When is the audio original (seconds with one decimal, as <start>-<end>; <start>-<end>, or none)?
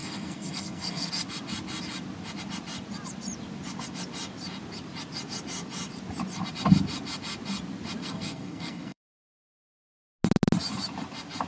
1.1-8.0; 9.0-11.5